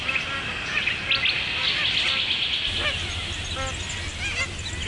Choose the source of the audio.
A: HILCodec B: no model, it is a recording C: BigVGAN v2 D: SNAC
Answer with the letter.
B